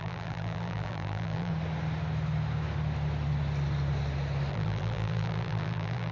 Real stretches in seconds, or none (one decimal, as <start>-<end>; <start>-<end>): 1.5-4.5